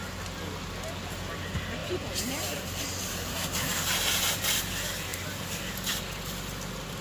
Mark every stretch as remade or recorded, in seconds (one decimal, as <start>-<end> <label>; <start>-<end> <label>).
0.0-1.8 recorded; 1.8-4.4 remade; 4.4-5.1 recorded; 5.1-6.0 remade; 6.0-7.0 recorded